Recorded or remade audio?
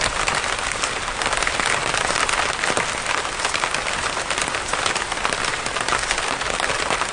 recorded